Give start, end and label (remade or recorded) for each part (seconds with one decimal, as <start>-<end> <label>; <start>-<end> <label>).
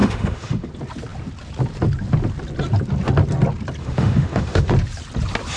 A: 0.0-0.7 remade; 0.7-3.8 recorded; 3.8-4.7 remade; 4.7-5.6 recorded